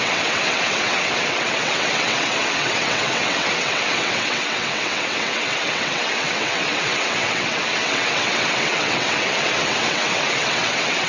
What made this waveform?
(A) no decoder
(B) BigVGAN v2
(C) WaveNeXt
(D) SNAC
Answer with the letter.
C